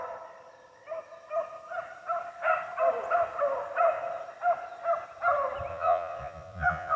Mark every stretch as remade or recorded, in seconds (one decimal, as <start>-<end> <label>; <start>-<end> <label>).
0.0-5.7 recorded; 5.7-7.0 remade